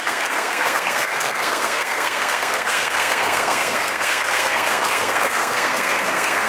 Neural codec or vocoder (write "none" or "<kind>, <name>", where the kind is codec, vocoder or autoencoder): codec, SNAC